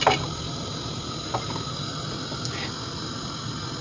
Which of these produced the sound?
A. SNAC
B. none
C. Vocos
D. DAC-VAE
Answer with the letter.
B